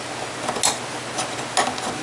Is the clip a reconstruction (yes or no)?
no